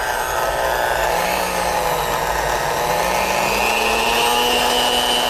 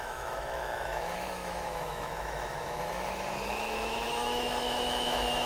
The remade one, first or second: second